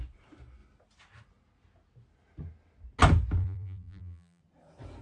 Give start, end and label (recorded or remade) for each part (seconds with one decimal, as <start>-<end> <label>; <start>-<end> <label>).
0.0-3.4 recorded; 3.4-4.4 remade; 4.4-5.0 recorded